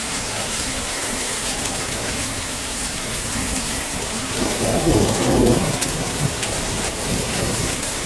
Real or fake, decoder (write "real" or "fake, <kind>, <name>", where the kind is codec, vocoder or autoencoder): fake, codec, SNAC